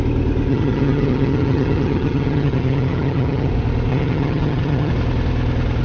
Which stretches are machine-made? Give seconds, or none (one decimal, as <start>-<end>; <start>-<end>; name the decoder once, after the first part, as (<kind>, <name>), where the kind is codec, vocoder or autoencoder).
0.5-3.5 (vocoder, HiFi-GAN); 3.9-4.9